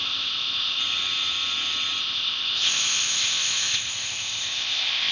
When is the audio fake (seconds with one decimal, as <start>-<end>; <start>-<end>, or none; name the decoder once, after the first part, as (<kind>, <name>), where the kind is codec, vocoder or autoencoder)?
0.0-0.8 (codec, ZipCodec); 2.0-5.1